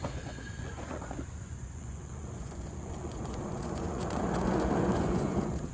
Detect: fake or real fake